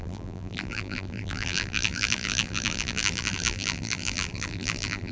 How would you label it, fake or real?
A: fake